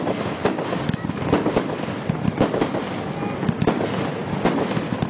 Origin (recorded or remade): recorded